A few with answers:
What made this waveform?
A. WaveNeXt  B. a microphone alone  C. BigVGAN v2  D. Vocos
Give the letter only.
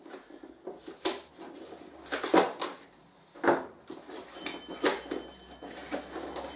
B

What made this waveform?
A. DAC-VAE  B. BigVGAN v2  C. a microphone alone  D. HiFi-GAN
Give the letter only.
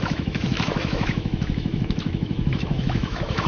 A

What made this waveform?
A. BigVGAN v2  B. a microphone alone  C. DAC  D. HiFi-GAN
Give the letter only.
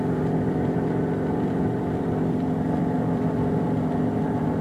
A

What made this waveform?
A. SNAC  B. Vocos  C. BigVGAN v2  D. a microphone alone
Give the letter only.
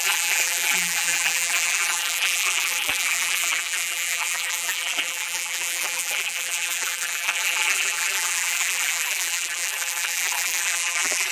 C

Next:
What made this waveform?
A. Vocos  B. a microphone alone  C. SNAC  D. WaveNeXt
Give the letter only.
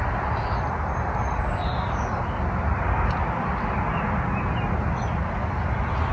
B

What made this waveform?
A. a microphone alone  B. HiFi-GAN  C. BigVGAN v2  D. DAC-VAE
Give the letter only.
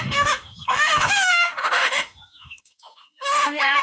D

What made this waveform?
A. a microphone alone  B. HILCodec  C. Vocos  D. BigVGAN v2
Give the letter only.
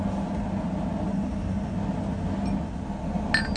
A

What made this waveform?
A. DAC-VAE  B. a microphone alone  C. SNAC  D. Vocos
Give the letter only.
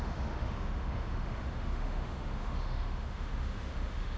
A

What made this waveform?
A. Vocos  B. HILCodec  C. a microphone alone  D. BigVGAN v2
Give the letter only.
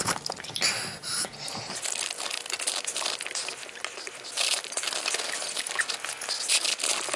C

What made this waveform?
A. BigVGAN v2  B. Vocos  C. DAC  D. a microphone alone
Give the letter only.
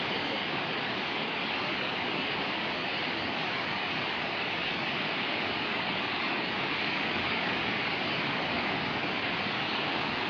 C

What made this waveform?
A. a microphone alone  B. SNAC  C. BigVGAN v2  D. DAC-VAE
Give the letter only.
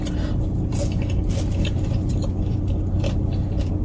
A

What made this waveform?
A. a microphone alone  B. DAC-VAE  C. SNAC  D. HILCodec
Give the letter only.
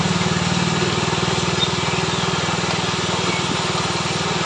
A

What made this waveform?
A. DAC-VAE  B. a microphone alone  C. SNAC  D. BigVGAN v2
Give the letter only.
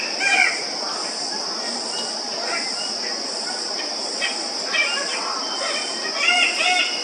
B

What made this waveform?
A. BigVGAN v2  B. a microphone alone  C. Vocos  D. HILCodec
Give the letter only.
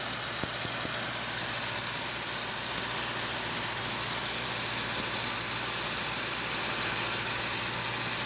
B